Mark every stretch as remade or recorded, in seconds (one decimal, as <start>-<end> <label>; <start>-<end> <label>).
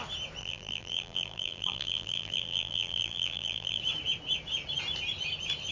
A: 0.0-0.4 recorded; 0.4-3.8 remade; 3.8-5.7 recorded